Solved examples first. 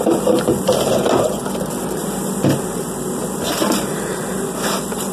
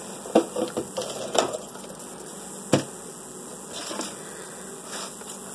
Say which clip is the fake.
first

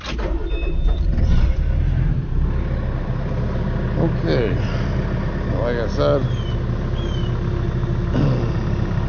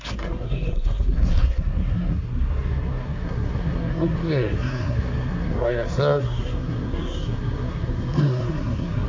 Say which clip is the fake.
second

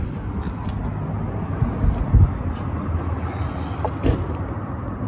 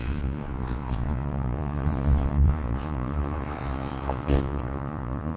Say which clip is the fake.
second